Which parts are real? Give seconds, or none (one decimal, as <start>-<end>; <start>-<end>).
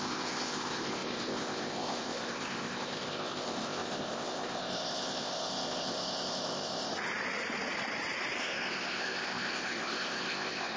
6.9-8.4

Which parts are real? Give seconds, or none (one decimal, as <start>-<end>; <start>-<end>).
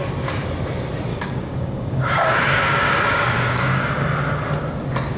0.0-1.1; 3.9-5.2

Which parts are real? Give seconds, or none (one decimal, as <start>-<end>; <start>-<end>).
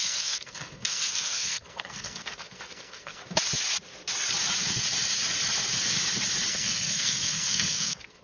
3.2-6.5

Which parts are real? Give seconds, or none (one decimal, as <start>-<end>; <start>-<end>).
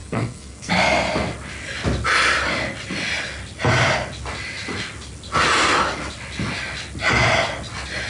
0.7-8.1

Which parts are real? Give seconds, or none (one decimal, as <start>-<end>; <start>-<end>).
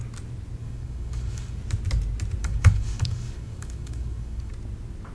0.0-0.6; 1.6-2.4; 4.5-5.1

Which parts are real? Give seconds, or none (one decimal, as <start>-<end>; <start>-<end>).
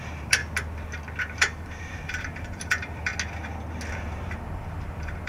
0.4-1.2; 3.1-3.9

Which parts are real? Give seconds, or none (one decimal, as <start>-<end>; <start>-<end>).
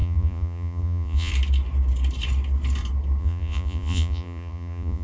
1.3-3.2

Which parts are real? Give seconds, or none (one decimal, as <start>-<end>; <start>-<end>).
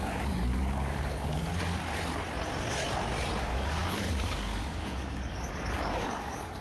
1.5-3.4